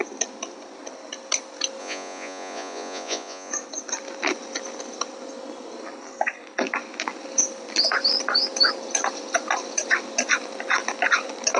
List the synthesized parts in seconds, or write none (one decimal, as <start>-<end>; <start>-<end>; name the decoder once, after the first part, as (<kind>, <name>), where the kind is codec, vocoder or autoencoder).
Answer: 1.8-3.5 (vocoder, Vocos)